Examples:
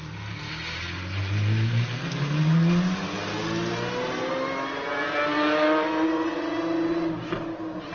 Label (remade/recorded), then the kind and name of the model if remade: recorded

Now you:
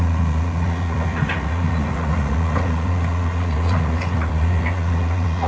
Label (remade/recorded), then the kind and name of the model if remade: remade, vocoder, Vocos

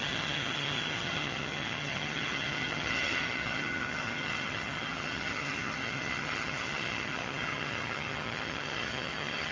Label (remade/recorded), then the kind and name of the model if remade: remade, vocoder, HiFi-GAN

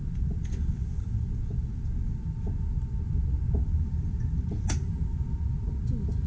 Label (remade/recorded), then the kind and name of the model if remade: recorded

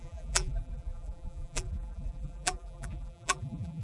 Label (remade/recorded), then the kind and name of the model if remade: remade, vocoder, BigVGAN v2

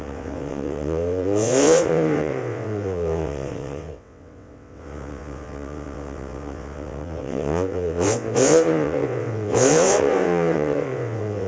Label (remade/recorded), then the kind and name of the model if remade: remade, vocoder, WaveNeXt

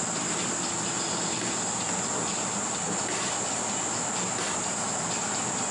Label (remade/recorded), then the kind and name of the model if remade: recorded